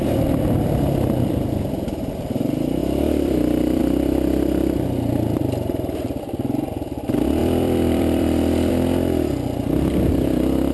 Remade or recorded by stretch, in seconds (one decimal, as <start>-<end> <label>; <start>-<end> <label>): 0.0-2.8 recorded; 2.8-3.8 remade; 3.8-7.4 recorded; 7.4-8.7 remade; 8.7-10.7 recorded